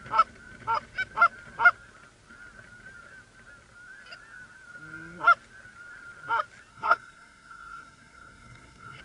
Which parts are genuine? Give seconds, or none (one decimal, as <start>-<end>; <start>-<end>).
0.0-6.7